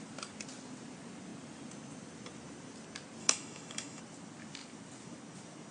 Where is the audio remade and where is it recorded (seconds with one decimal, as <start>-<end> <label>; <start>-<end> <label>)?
0.0-3.2 recorded; 3.2-4.0 remade; 4.0-5.7 recorded